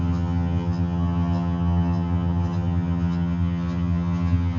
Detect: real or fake fake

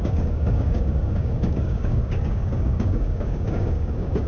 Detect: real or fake fake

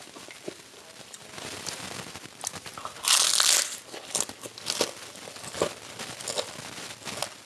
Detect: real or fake real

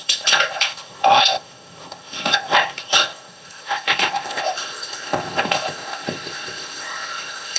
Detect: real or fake fake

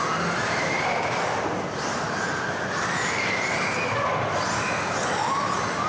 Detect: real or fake real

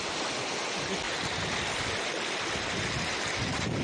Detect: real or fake real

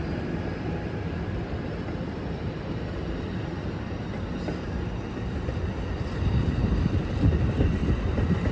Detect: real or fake fake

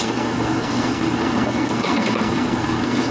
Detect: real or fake fake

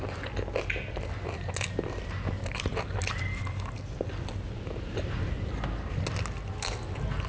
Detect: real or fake real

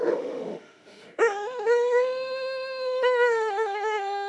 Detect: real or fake fake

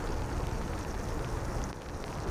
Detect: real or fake real